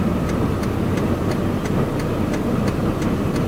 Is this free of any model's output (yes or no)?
yes